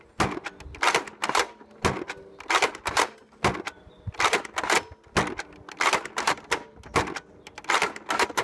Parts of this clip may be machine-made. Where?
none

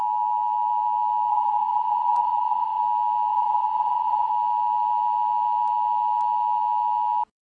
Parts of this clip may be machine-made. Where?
1.3-2.8 (vocoder, Vocos); 3.3-4.3

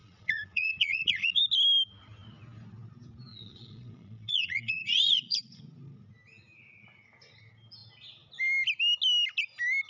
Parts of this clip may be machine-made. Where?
0.0-1.4 (vocoder, Vocos); 3.3-5.6

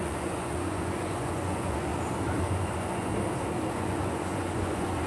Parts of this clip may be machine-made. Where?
0.0-1.9 (vocoder, Vocos); 2.5-3.1; 3.7-5.1